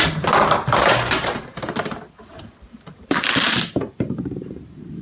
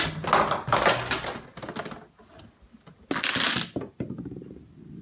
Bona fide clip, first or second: second